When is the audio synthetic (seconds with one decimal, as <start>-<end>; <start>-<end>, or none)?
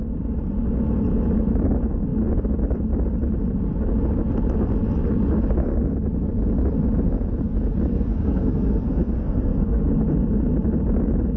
7.9-9.9